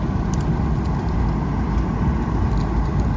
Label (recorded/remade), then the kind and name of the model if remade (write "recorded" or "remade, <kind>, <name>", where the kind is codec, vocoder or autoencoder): recorded